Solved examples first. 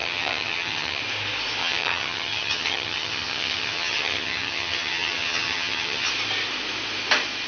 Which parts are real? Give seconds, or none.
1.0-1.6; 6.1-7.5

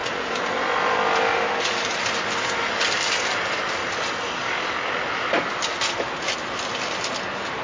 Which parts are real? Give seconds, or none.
0.0-7.6